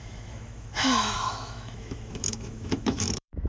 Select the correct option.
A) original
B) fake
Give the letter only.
B